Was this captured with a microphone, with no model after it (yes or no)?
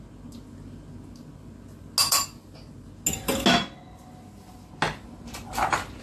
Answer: yes